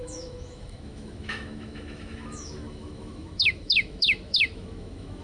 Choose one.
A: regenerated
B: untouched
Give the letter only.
A